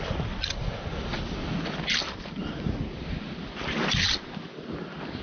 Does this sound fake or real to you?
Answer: real